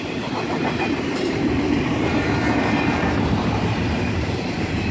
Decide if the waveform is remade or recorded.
remade